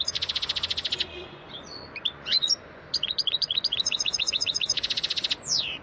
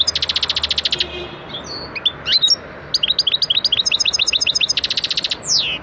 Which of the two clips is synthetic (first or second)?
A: first